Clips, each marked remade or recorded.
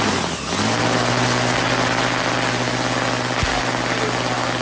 recorded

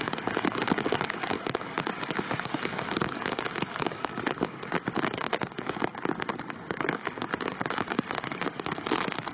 remade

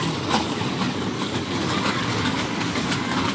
remade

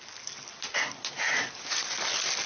recorded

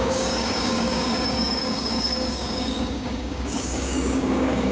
remade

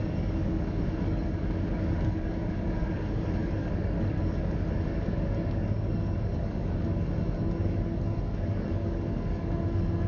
remade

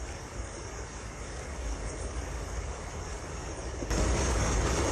remade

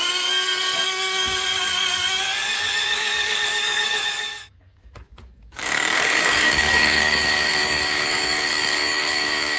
remade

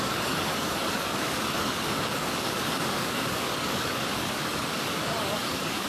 remade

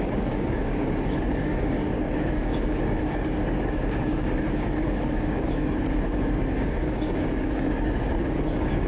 remade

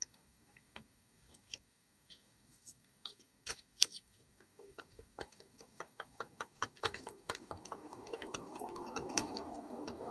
remade